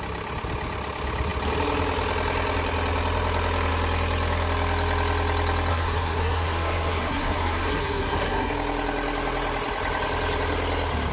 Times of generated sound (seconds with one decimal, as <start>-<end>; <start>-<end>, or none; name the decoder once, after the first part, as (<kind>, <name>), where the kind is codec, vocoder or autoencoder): 5.7-8.5 (codec, SNAC)